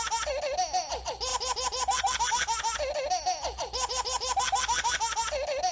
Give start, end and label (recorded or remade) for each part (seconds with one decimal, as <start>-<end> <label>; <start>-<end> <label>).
0.0-5.7 recorded